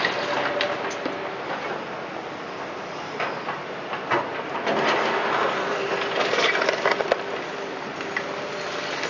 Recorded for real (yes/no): yes